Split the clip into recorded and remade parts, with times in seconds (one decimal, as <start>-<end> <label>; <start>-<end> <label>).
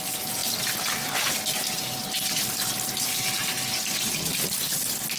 0.0-5.2 recorded